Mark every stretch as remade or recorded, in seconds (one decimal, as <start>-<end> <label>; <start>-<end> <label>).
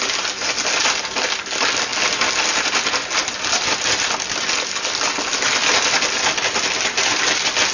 0.0-7.7 recorded